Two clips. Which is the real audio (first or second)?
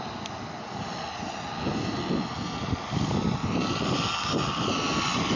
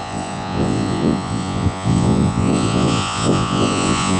first